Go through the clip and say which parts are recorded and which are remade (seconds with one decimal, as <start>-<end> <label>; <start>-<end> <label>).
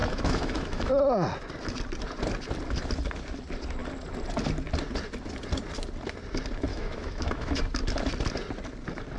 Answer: 0.0-0.9 remade; 0.9-6.7 recorded; 6.7-7.6 remade; 7.6-9.2 recorded